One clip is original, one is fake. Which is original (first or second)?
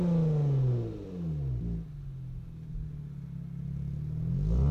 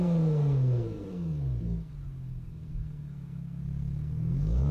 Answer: first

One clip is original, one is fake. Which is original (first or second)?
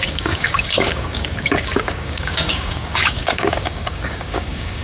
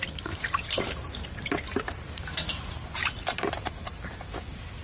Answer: second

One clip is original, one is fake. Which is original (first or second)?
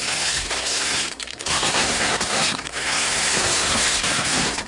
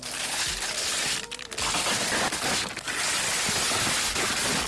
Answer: second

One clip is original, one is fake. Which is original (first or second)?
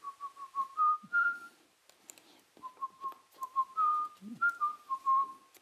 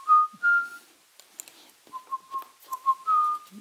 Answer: second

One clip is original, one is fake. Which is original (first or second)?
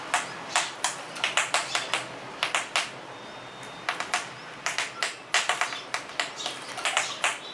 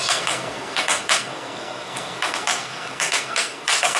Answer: first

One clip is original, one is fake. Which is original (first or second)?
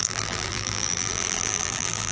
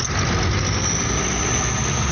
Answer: second